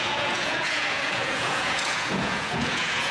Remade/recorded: remade